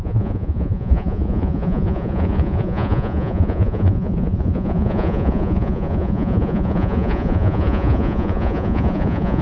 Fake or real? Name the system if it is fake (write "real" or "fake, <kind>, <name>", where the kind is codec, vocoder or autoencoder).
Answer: fake, vocoder, Vocos